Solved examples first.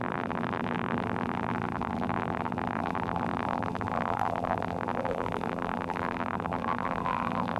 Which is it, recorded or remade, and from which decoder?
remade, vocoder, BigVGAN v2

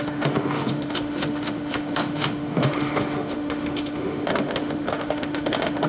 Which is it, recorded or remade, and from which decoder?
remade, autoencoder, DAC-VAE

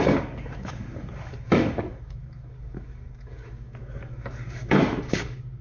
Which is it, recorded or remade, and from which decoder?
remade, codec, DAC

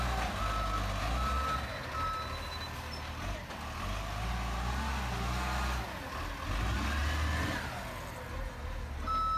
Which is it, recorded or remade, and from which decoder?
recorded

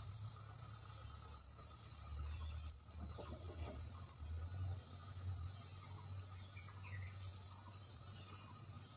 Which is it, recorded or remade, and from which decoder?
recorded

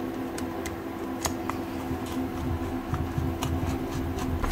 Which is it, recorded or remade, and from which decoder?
remade, vocoder, BigVGAN v2